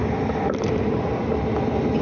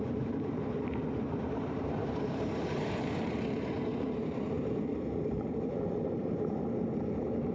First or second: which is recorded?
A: first